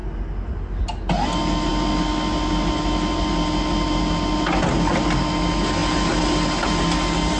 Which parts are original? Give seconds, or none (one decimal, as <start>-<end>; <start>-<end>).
0.0-7.4